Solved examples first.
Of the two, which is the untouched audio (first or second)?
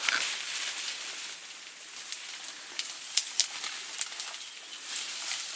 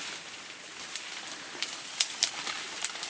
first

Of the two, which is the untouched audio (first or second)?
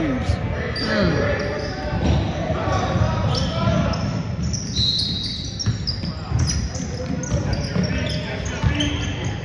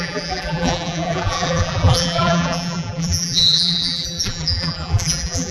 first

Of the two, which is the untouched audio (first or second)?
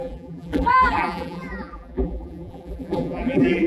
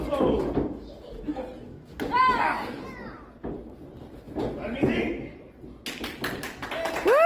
second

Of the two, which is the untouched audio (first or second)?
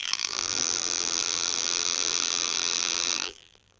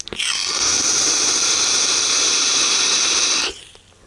second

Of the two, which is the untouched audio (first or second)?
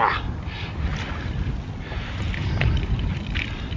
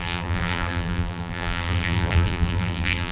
first